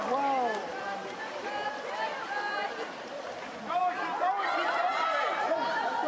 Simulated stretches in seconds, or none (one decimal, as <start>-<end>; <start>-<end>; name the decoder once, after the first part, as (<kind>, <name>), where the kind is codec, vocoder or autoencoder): 0.6-3.8 (vocoder, BigVGAN v2)